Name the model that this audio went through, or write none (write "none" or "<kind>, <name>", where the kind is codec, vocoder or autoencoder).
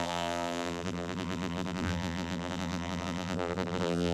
vocoder, BigVGAN v2